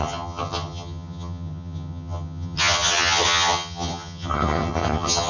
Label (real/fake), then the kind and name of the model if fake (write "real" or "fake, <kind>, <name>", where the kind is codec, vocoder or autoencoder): fake, vocoder, HiFi-GAN